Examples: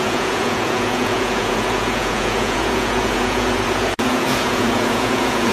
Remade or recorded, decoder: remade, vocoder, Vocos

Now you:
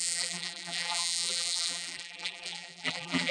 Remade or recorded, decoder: remade, vocoder, BigVGAN v2